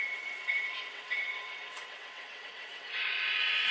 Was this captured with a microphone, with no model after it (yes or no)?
no